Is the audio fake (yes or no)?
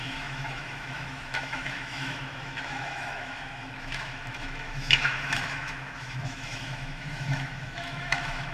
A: yes